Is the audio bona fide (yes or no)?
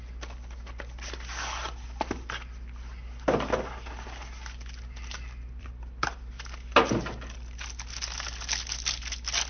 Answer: yes